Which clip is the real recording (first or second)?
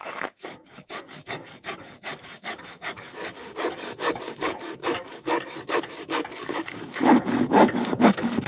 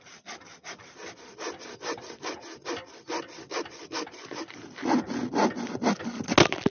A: second